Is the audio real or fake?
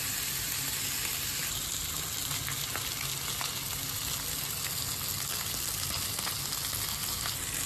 real